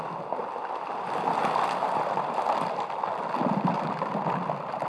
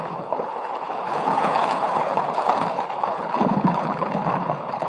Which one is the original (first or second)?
first